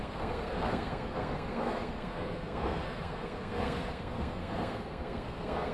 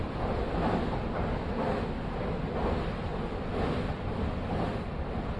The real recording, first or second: second